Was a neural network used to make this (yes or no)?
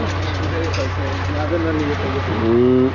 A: no